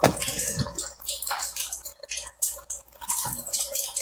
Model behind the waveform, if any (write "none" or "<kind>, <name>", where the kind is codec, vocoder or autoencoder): codec, DAC